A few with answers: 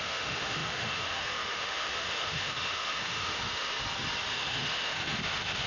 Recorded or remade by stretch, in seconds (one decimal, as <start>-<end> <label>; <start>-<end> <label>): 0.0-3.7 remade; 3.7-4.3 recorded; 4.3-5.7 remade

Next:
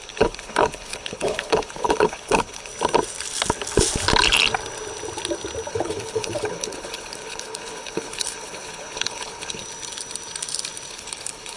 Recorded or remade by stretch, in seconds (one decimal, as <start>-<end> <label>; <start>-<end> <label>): 0.0-2.7 remade; 2.7-5.7 recorded; 5.7-9.6 remade; 9.6-10.9 recorded; 10.9-11.6 remade

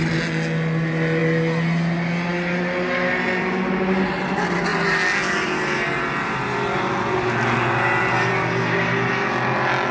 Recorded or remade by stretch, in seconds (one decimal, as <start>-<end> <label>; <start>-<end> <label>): 0.0-9.9 recorded

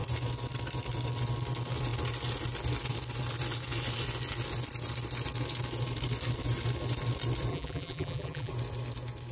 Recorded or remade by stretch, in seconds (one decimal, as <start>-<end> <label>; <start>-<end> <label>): 0.0-7.5 recorded; 7.5-8.5 remade; 8.5-9.3 recorded

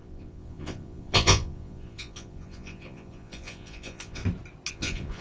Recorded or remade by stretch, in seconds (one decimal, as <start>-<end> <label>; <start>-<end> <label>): 0.0-4.2 remade; 4.2-4.7 recorded; 4.7-5.2 remade

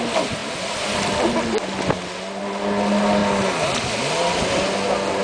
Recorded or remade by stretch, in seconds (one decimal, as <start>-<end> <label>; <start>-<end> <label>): 0.0-5.2 recorded

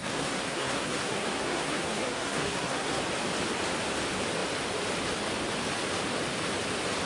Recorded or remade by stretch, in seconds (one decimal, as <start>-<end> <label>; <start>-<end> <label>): 0.0-3.0 remade; 3.0-7.1 recorded

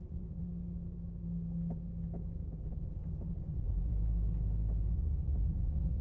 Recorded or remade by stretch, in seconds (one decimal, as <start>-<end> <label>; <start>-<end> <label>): 0.0-0.4 remade; 0.4-3.3 recorded; 3.3-3.9 remade; 3.9-4.9 recorded; 4.9-6.0 remade